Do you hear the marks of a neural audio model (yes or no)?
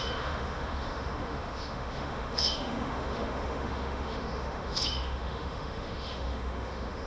yes